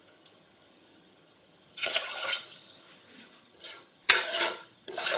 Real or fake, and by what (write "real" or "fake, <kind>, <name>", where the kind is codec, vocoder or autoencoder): fake, vocoder, HiFi-GAN